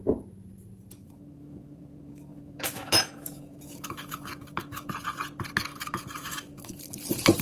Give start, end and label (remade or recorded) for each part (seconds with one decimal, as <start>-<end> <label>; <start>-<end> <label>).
0.0-1.0 recorded; 1.0-4.9 remade; 4.9-5.7 recorded; 5.7-6.8 remade; 6.8-7.4 recorded